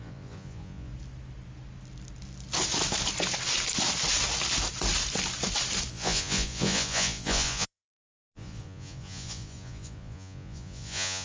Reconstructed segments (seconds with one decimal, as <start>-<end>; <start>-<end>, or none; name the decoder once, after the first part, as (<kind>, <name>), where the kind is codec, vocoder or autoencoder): 0.0-0.9 (vocoder, Vocos); 5.9-11.2